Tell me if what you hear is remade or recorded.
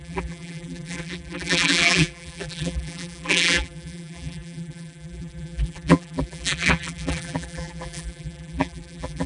remade